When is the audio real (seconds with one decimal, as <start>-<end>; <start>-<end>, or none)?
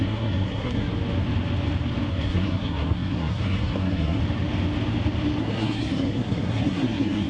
0.9-2.1; 4.2-5.4